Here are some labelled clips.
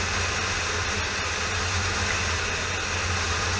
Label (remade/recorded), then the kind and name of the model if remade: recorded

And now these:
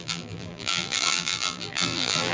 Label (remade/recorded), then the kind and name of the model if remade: remade, vocoder, BigVGAN v2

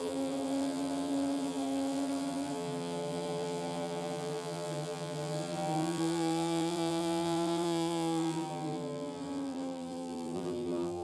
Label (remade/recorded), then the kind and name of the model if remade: remade, vocoder, BigVGAN v2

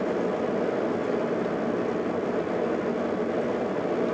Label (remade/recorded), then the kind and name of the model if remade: recorded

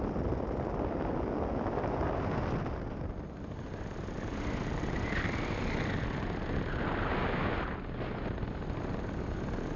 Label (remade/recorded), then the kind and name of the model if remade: recorded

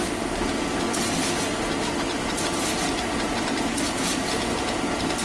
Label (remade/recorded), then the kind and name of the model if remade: recorded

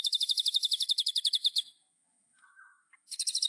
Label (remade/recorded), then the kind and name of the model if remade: remade, autoencoder, DAC-VAE